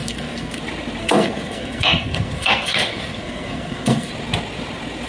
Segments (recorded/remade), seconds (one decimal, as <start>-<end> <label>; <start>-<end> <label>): 0.0-0.6 remade; 0.6-1.0 recorded; 1.0-4.1 remade; 4.1-5.1 recorded